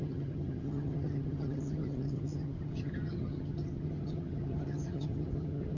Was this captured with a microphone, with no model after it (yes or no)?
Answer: no